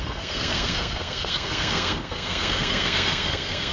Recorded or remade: remade